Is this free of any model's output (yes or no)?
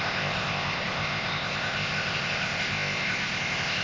no